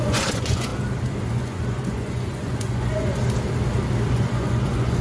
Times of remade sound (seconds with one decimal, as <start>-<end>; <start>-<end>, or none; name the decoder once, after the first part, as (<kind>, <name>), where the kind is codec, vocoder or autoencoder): 0.0-0.7 (vocoder, Vocos); 1.3-3.2; 4.1-5.0